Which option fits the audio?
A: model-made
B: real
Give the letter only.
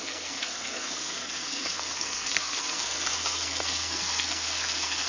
A